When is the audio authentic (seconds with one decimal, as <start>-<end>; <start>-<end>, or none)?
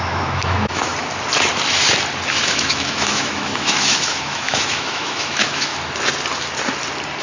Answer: 0.9-2.3; 5.7-7.2